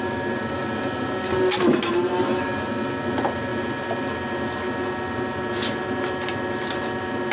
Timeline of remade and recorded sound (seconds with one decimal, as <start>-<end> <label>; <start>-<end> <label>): 0.0-7.3 recorded